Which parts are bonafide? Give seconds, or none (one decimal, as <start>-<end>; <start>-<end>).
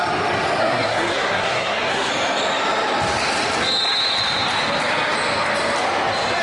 0.0-0.6; 2.1-6.4